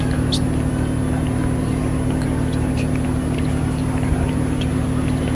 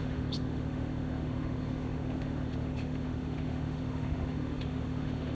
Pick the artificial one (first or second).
second